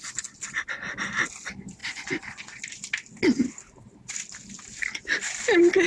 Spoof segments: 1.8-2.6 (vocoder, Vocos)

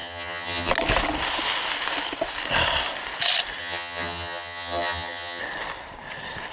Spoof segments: 0.0-0.7 (vocoder, HiFi-GAN); 3.6-5.4

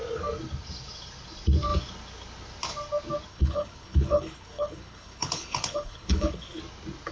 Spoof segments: 3.3-6.6 (codec, HILCodec)